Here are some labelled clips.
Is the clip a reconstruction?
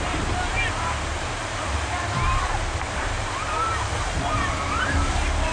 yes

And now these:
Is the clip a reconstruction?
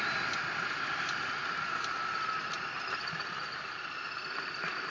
no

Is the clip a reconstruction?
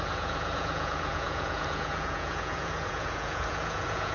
yes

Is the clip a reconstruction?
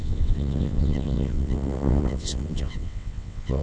yes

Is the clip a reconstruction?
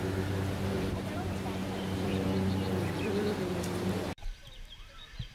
yes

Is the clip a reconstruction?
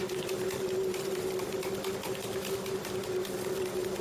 no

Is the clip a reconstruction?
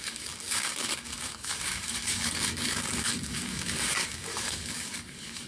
yes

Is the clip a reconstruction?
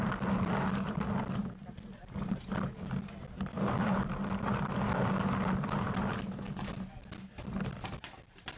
no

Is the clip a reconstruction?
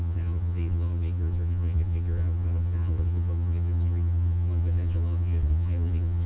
yes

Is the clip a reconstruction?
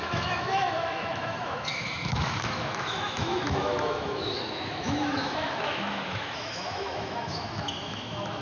yes